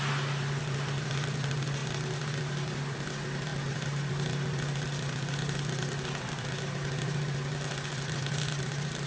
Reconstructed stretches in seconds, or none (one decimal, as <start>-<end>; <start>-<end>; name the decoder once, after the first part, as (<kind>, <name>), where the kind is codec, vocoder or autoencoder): none